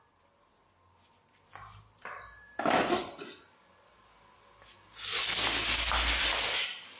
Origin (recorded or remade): recorded